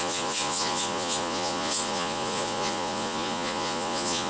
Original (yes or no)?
no